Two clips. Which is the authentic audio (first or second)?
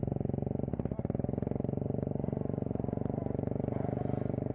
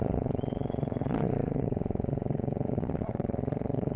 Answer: first